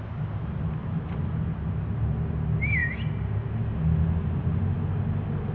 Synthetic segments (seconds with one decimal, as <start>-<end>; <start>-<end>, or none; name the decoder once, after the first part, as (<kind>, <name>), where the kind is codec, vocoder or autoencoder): none